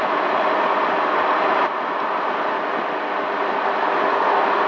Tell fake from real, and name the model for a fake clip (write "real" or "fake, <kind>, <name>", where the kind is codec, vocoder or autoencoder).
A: real